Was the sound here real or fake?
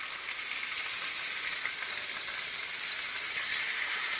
real